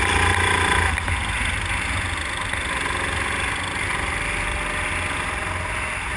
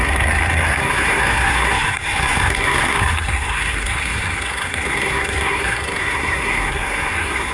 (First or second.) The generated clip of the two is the second